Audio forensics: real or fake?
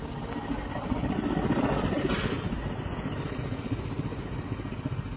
real